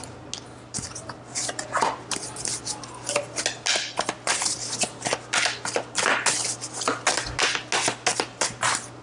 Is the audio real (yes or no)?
yes